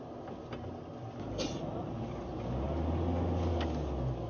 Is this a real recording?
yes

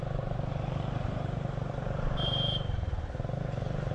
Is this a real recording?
no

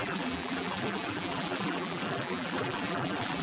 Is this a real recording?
no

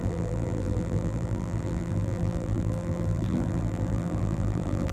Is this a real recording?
no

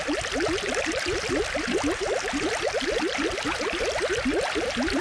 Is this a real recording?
no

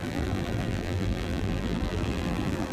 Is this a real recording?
no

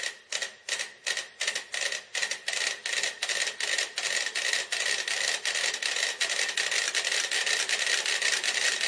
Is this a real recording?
yes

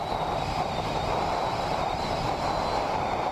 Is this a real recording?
yes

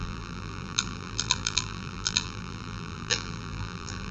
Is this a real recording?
no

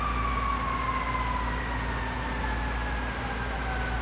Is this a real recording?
yes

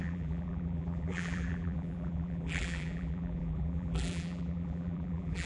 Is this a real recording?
no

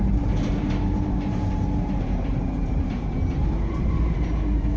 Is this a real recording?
no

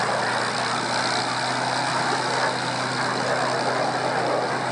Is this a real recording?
yes